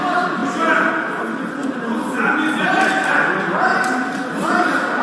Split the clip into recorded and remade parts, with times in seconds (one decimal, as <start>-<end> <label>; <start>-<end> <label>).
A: 0.0-5.0 recorded

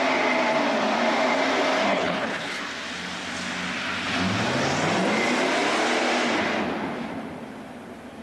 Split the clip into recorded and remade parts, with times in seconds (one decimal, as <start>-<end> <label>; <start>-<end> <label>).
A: 0.0-1.9 recorded; 1.9-2.6 remade; 2.6-8.2 recorded

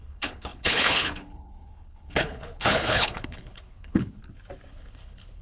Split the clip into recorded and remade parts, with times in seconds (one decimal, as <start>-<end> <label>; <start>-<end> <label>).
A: 0.0-4.2 remade; 4.2-4.7 recorded; 4.7-5.4 remade

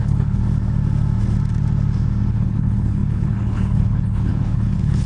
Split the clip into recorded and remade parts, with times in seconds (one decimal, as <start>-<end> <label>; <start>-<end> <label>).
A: 0.0-0.4 remade; 0.4-2.3 recorded; 2.3-5.1 remade

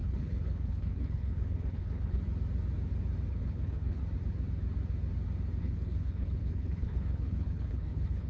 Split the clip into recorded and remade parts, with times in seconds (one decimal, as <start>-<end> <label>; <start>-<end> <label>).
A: 0.0-2.2 remade; 2.2-3.3 recorded; 3.3-4.0 remade; 4.0-5.6 recorded; 5.6-8.3 remade

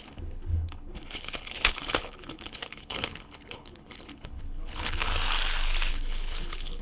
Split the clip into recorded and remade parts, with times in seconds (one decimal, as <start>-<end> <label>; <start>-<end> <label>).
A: 0.0-5.1 remade; 5.1-5.9 recorded; 5.9-6.8 remade

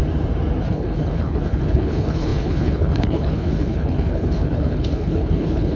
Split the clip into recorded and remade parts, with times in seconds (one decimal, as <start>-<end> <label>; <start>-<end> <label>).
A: 0.0-0.6 recorded; 0.6-5.8 remade